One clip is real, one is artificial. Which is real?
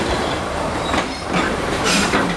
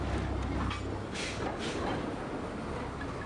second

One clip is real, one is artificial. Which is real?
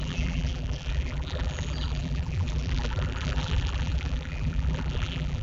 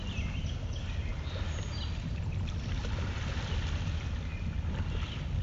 second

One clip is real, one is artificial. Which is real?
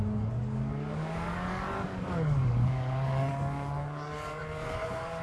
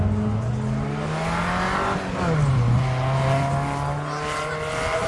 second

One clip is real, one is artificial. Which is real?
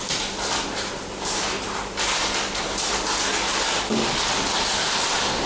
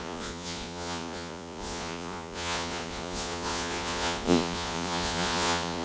first